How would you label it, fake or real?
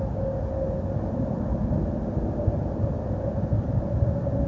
real